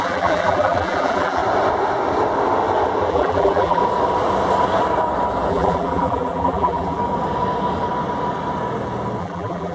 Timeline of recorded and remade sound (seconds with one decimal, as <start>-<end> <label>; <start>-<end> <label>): 0.0-1.4 remade; 1.4-3.1 recorded; 3.1-3.8 remade; 3.8-5.5 recorded; 5.5-7.0 remade; 7.0-9.2 recorded; 9.2-9.7 remade